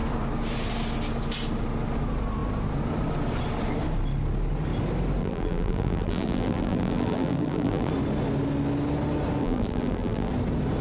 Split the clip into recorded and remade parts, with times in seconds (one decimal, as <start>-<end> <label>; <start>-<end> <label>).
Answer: 0.0-5.2 recorded; 5.2-7.9 remade; 7.9-9.4 recorded; 9.4-10.3 remade; 10.3-10.8 recorded